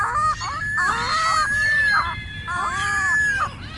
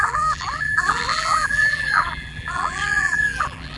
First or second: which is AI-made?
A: second